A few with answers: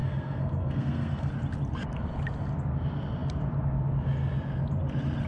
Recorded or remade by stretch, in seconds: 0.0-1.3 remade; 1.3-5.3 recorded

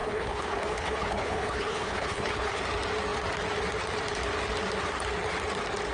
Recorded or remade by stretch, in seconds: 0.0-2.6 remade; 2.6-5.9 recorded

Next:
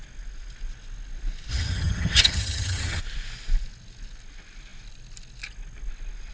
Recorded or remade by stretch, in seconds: 0.0-1.5 recorded; 1.5-3.0 remade; 3.0-6.3 recorded

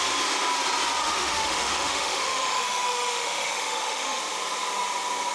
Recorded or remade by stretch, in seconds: 0.0-1.0 recorded; 1.0-4.2 remade; 4.2-5.3 recorded

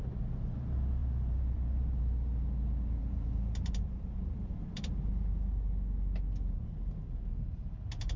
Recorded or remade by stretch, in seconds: 0.0-1.0 recorded; 1.0-2.0 remade; 2.0-3.0 recorded; 3.0-4.9 remade; 4.9-8.2 recorded

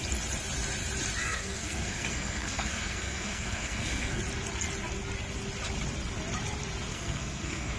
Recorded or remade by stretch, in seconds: 0.0-1.2 recorded; 1.2-4.2 remade; 4.2-6.9 recorded; 6.9-7.8 remade